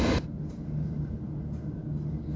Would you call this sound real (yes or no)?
yes